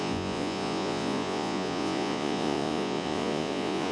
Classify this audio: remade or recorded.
remade